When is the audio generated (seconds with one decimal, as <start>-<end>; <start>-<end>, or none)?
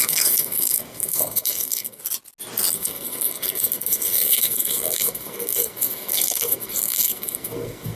0.0-2.0; 2.7-8.0